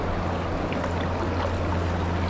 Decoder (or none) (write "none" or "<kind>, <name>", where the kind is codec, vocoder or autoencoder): none